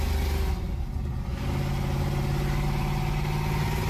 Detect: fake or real real